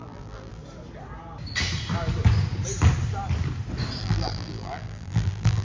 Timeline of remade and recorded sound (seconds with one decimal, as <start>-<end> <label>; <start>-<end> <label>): 0.0-0.6 remade; 0.6-4.0 recorded; 4.0-5.6 remade